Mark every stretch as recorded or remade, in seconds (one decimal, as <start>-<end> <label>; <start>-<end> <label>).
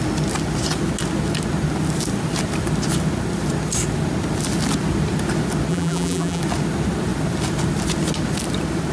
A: 0.0-5.7 recorded; 5.7-6.4 remade; 6.4-8.9 recorded